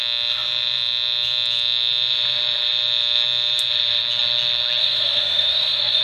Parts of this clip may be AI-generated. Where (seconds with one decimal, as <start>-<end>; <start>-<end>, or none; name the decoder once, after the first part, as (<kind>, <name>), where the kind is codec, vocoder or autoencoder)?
4.8-6.0 (autoencoder, DAC-VAE)